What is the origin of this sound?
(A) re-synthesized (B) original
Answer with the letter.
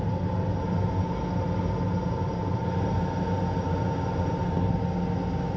B